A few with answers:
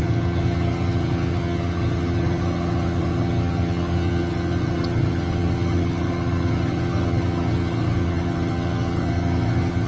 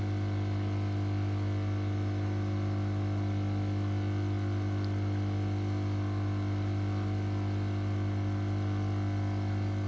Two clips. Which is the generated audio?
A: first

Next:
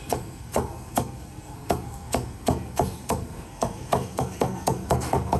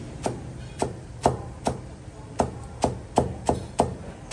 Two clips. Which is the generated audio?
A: first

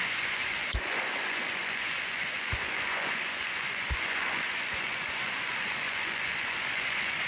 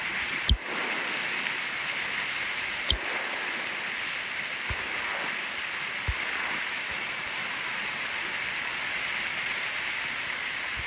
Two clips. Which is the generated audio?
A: first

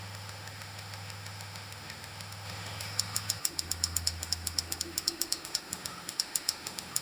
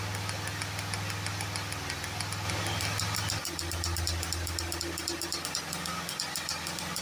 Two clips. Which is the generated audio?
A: first